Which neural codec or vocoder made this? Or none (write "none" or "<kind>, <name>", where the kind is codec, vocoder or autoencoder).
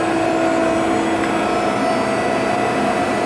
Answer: none